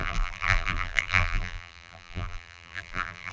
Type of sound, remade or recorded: remade